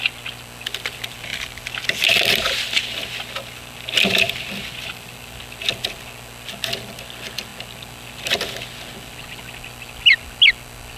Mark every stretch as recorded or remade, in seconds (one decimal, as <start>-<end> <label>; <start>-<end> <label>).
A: 0.0-11.0 recorded